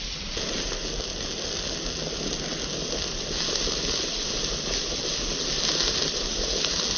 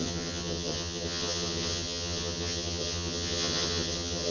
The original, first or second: first